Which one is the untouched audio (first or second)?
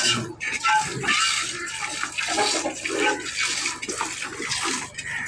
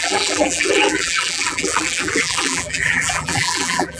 first